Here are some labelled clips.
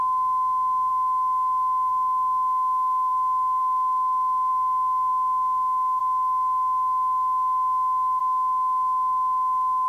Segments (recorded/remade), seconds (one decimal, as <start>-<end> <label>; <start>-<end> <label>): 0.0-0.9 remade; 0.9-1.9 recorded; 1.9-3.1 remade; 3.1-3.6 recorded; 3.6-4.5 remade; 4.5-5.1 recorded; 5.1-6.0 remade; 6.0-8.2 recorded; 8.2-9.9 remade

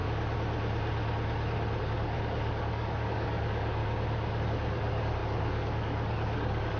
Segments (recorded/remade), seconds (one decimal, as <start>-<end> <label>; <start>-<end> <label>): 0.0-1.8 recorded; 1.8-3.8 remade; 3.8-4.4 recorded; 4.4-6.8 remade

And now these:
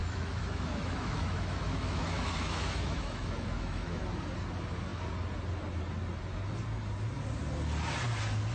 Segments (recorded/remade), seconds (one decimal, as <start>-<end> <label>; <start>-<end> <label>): 0.0-4.0 remade; 4.0-8.5 recorded